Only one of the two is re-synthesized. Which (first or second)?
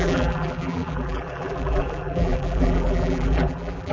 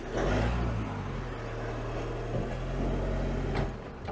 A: first